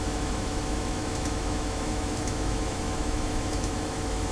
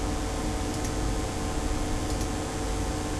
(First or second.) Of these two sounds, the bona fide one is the second